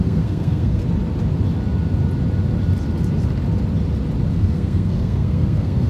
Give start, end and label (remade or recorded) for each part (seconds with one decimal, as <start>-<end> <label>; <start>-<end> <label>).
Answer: 0.0-0.8 remade; 0.8-4.3 recorded; 4.3-5.9 remade